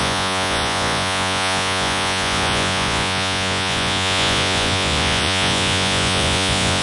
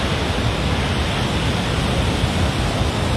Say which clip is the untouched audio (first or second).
second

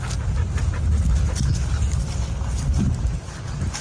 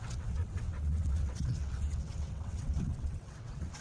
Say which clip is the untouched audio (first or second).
first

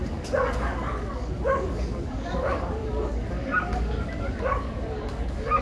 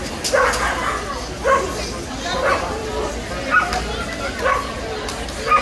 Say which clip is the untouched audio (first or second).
second